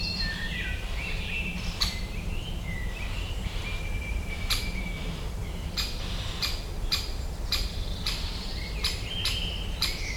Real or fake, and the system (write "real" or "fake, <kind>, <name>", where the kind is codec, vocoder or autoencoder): fake, vocoder, BigVGAN v2